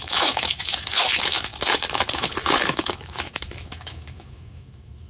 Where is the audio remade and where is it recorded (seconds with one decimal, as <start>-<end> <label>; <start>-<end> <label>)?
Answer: 0.0-5.1 remade